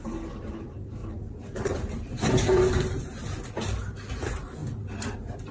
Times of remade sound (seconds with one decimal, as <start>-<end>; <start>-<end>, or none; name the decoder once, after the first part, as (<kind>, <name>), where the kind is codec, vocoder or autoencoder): 1.0-3.5 (vocoder, BigVGAN v2)